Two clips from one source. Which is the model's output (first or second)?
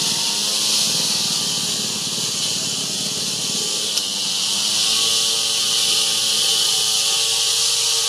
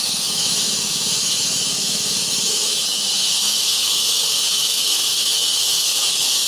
second